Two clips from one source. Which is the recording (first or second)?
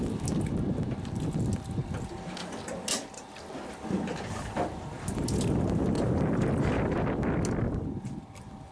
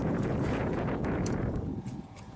first